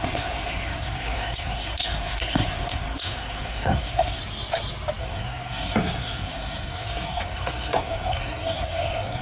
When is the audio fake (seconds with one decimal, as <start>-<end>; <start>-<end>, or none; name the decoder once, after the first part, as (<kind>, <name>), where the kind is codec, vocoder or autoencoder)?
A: 0.0-4.2 (codec, SNAC); 5.0-9.2